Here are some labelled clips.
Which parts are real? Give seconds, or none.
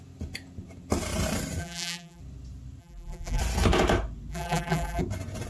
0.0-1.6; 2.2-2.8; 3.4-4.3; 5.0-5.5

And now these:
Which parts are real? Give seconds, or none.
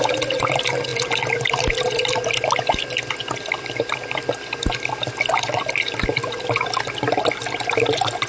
0.0-8.3